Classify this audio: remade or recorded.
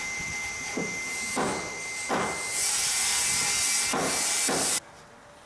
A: recorded